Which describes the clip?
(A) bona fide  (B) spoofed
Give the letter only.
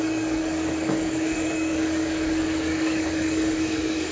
B